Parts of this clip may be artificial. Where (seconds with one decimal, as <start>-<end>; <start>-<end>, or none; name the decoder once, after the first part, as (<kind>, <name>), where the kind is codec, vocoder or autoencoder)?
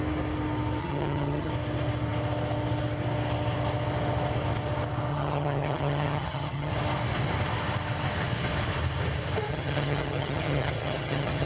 0.8-1.5 (vocoder, HiFi-GAN); 5.1-6.7; 9.5-11.5